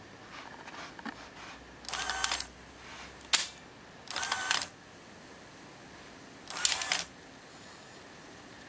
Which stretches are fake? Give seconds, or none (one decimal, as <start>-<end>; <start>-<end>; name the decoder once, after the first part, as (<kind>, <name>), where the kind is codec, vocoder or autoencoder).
7.5-8.0 (codec, DAC)